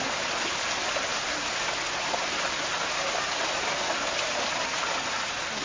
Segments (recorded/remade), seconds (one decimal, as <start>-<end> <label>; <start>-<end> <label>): 0.0-5.6 recorded